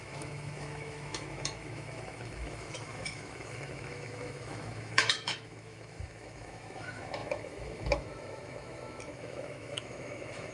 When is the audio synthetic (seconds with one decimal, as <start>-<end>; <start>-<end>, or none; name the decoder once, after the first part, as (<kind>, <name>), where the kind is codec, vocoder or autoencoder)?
0.0-10.5 (autoencoder, DAC-VAE)